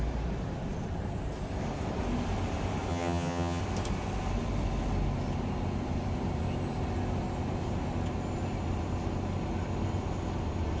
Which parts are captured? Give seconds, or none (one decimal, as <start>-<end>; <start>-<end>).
0.0-2.9; 3.6-10.8